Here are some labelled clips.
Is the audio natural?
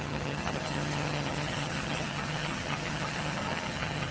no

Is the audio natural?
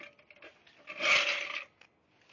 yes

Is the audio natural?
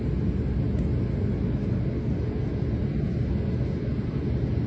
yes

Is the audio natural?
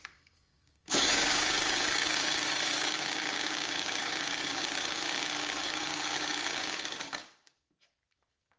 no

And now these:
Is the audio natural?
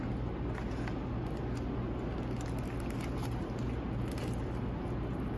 yes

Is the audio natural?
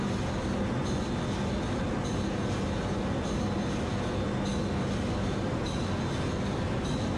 yes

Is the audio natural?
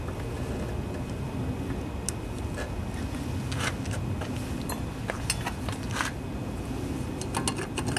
yes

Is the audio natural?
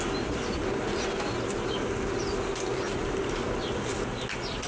yes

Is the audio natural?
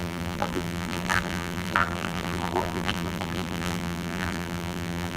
no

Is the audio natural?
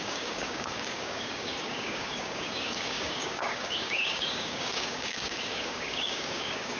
no